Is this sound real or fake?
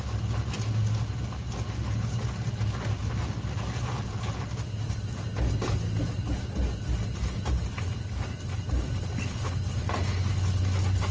real